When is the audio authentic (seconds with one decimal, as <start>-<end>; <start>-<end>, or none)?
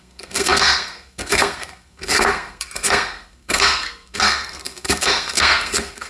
none